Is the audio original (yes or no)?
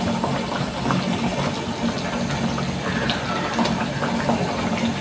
yes